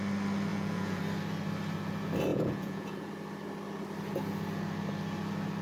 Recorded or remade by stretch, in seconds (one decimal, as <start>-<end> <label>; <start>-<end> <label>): 0.0-0.5 recorded; 0.5-1.0 remade; 1.0-2.3 recorded; 2.3-3.1 remade; 3.1-5.6 recorded